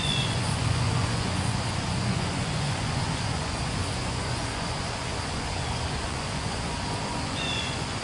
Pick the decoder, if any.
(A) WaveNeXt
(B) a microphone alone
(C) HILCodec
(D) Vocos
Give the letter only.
D